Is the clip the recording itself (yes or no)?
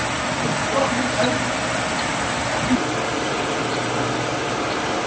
yes